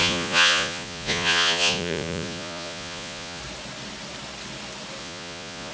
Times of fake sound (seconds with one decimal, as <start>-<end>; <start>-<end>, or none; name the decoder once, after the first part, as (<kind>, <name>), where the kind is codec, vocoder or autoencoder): 0.0-3.4 (vocoder, Vocos); 5.0-5.7